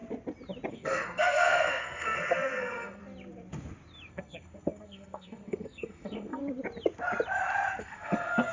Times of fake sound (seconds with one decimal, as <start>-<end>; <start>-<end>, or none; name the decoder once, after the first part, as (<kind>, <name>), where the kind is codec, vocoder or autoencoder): 0.7-3.0 (codec, SNAC); 4.1-6.4; 7.8-8.5